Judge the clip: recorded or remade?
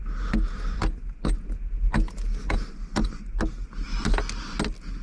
recorded